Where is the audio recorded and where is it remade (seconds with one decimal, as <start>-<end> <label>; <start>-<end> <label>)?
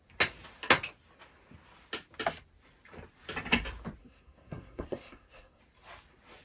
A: 0.0-4.0 recorded; 4.0-5.6 remade; 5.6-6.4 recorded